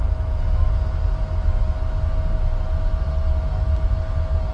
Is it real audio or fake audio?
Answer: real